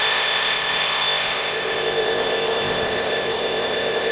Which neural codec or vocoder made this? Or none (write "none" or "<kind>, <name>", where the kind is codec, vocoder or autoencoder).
codec, ZipCodec